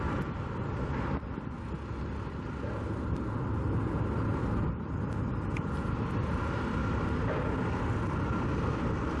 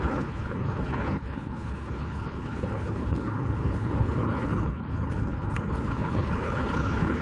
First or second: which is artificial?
second